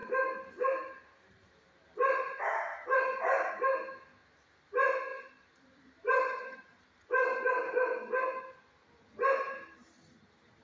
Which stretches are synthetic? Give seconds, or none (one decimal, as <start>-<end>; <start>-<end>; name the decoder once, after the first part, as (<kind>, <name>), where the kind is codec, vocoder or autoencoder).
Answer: 0.0-3.5 (vocoder, BigVGAN v2); 5.1-7.0